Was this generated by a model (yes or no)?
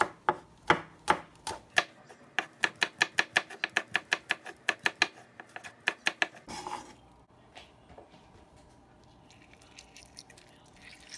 no